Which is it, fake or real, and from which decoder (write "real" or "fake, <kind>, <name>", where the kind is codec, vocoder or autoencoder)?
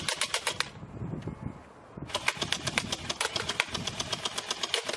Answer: real